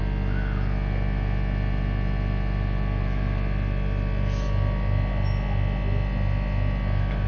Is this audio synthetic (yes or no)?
no